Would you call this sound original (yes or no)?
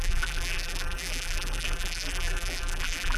no